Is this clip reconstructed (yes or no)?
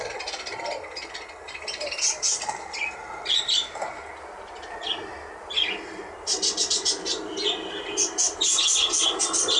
no